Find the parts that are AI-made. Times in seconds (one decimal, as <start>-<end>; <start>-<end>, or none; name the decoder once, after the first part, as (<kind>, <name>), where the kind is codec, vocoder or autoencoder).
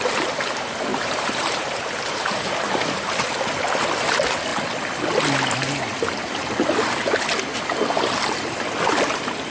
0.9-3.2 (vocoder, BigVGAN v2)